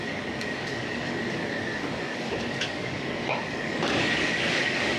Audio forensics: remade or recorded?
remade